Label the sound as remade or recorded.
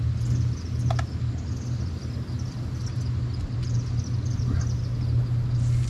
recorded